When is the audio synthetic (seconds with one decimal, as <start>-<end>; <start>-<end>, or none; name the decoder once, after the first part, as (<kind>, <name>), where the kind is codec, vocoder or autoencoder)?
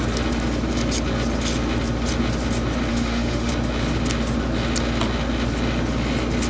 2.9-3.5 (autoencoder, DAC-VAE)